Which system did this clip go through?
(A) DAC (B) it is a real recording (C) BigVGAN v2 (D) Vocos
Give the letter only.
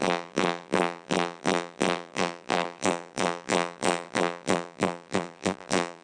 C